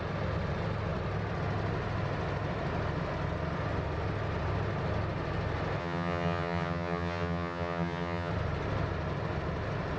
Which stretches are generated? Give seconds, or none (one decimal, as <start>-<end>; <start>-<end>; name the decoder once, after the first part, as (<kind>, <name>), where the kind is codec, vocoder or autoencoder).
5.8-8.3 (vocoder, HiFi-GAN)